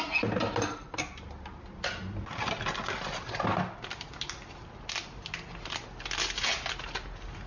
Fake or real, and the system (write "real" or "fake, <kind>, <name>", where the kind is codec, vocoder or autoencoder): real